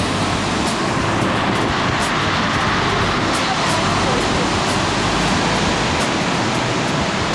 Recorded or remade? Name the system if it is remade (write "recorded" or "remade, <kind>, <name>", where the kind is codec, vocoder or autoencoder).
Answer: recorded